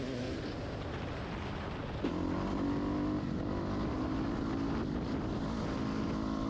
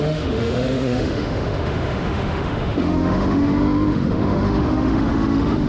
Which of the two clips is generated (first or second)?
second